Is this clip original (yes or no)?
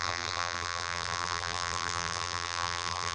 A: no